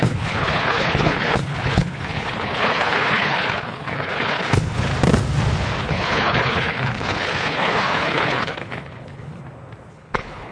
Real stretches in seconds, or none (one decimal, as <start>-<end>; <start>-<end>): 4.9-5.8; 9.4-9.9

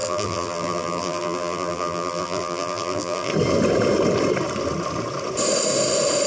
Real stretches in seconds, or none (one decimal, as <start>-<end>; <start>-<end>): 3.3-6.3

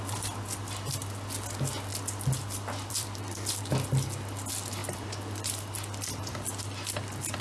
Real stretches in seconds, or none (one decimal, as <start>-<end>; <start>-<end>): 0.0-1.9; 3.6-4.8

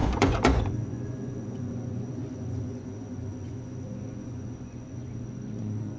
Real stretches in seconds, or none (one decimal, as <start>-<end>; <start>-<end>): none